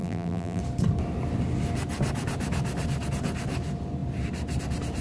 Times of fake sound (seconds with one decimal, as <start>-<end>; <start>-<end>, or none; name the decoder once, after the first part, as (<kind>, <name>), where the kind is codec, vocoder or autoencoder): 0.0-0.6 (vocoder, BigVGAN v2)